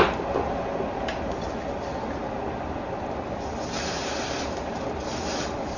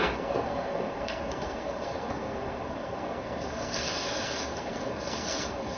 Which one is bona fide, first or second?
first